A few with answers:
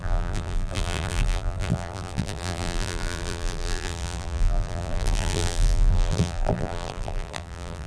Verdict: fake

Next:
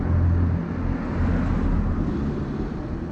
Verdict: real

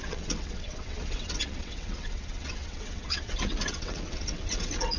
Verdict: fake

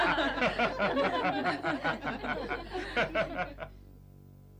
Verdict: real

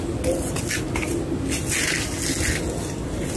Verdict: real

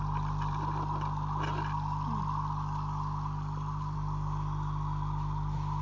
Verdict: real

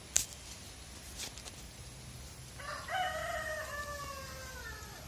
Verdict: real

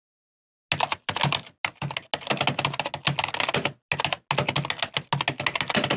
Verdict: real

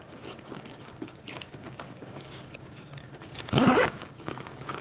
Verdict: fake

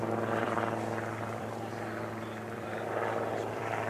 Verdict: fake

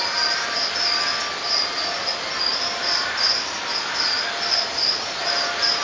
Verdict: real